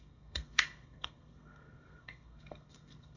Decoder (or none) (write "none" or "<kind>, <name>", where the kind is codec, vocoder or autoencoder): codec, SNAC